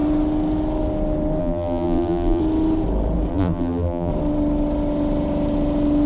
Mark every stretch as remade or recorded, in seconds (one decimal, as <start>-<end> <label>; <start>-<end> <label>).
0.0-1.4 recorded; 1.4-2.4 remade; 2.4-3.3 recorded; 3.3-4.1 remade; 4.1-6.1 recorded

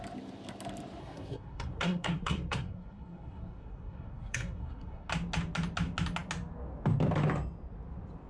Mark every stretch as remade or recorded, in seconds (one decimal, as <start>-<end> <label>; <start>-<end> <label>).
0.0-1.0 recorded; 1.0-5.1 remade; 5.1-8.3 recorded

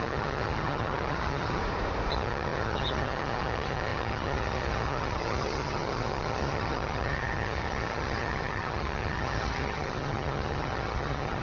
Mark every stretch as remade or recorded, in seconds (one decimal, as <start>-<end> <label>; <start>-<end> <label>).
0.0-1.6 remade; 1.6-2.1 recorded; 2.1-11.4 remade

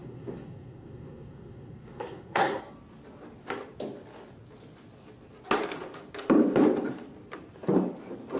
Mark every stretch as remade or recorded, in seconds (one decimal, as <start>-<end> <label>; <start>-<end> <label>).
0.0-2.6 remade; 2.6-8.4 recorded

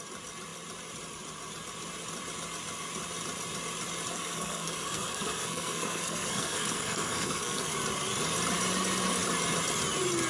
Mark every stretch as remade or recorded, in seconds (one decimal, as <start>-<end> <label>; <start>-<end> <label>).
0.0-4.1 recorded; 4.1-7.7 remade; 7.7-10.3 recorded

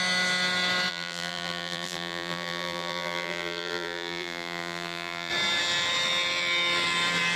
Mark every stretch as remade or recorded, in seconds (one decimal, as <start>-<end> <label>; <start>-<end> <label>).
0.0-0.9 recorded; 0.9-5.3 remade; 5.3-7.4 recorded

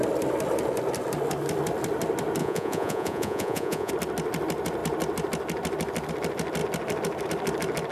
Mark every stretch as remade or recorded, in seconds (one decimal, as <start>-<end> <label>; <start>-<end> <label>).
0.0-2.4 recorded; 2.4-3.9 remade; 3.9-7.9 recorded

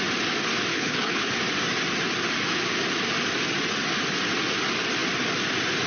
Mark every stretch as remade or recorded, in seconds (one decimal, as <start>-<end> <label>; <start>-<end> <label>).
0.0-0.7 recorded; 0.7-1.3 remade; 1.3-5.9 recorded